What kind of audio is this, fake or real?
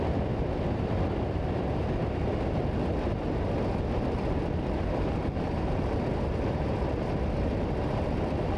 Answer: real